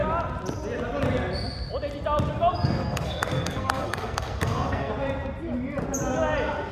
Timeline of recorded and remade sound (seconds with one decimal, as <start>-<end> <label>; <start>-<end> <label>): 0.0-2.5 recorded; 2.5-4.9 remade; 4.9-6.7 recorded